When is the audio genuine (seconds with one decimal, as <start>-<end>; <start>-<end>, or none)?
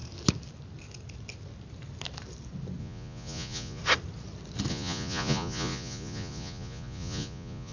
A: 0.0-2.8; 3.8-4.7